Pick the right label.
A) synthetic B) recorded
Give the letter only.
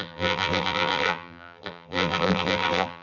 A